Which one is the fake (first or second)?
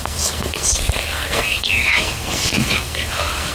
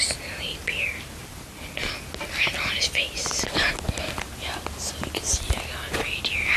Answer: first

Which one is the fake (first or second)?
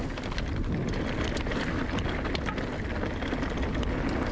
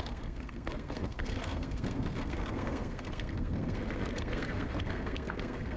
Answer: second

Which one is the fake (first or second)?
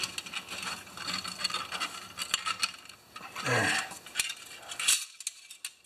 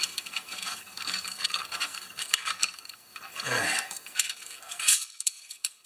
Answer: second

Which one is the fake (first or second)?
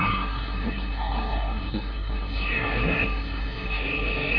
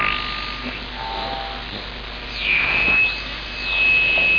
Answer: first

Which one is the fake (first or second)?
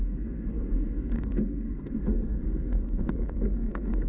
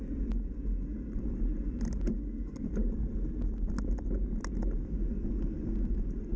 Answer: first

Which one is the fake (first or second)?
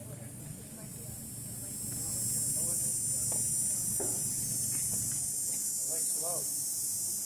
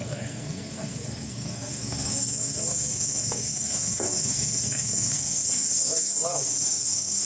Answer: second